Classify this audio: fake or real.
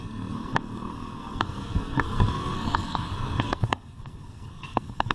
fake